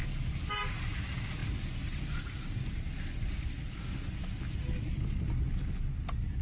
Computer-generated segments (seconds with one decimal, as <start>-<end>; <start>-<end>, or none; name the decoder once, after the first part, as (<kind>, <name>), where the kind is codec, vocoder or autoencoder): 0.0-0.6 (vocoder, BigVGAN v2)